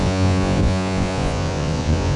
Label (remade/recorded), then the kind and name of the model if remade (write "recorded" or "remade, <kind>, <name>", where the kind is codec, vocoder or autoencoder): remade, vocoder, Vocos